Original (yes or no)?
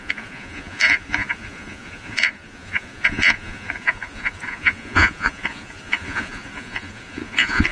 no